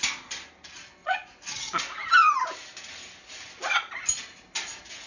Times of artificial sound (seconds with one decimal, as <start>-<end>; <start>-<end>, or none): 1.0-1.8